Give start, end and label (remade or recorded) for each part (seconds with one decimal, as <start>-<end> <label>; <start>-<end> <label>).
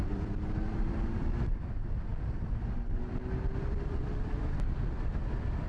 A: 0.0-5.7 remade